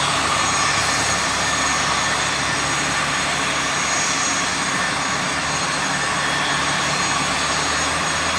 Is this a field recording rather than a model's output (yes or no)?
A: yes